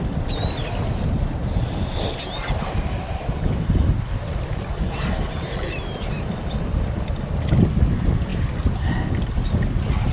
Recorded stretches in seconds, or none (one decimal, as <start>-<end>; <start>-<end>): 0.0-10.1